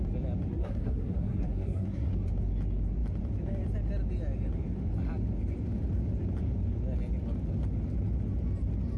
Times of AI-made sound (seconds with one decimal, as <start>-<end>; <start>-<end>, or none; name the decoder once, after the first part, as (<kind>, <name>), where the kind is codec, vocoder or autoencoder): 0.5-2.1 (codec, SNAC)